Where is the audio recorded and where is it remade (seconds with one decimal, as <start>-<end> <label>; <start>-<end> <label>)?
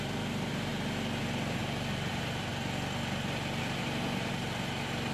0.0-0.7 remade; 0.7-1.2 recorded; 1.2-1.6 remade; 1.6-2.1 recorded; 2.1-2.5 remade; 2.5-3.6 recorded; 3.6-5.1 remade